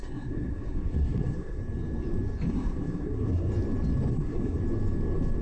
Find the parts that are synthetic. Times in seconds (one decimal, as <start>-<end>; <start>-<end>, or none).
0.0-1.6; 2.5-3.5; 4.1-4.6